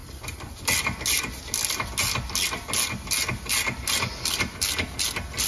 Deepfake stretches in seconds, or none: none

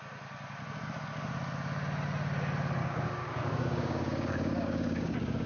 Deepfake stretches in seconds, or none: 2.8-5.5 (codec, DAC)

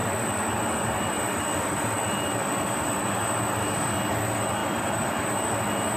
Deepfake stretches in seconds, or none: 4.6-5.3 (vocoder, BigVGAN v2)

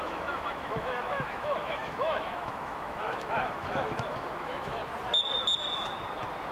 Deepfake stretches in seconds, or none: 0.0-4.8 (autoencoder, DAC-VAE)

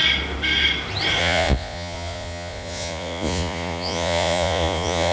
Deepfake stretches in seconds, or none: 1.2-5.1 (vocoder, Vocos)

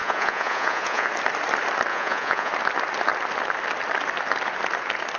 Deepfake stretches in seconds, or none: 0.0-1.1 (vocoder, Vocos); 1.9-2.5

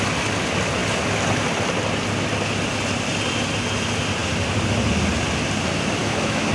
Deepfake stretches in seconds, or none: 6.0-6.5 (autoencoder, DAC-VAE)